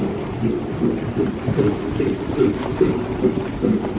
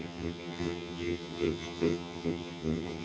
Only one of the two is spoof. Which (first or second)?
second